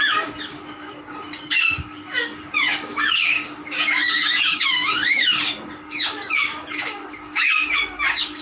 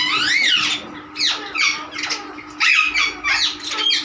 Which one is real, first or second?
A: second